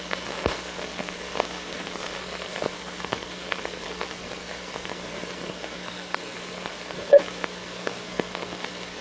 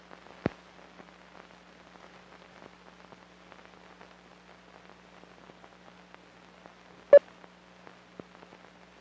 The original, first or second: second